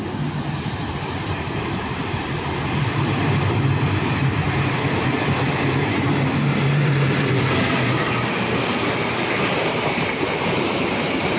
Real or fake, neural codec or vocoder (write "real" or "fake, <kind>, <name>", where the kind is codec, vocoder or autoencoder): fake, vocoder, BigVGAN v2